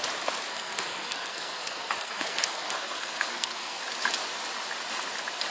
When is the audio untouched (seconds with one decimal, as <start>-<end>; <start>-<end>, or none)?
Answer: 0.0-0.5; 3.8-5.5